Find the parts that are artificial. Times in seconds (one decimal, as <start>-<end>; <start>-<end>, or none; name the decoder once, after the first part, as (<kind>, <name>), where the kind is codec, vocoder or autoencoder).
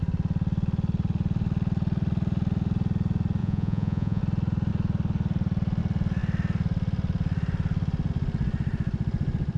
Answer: 3.4-4.2 (vocoder, Vocos)